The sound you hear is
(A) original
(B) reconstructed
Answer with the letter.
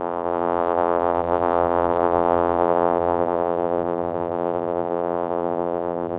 B